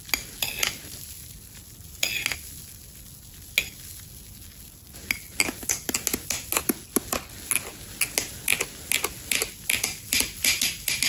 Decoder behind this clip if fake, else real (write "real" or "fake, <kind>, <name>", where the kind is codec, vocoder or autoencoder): real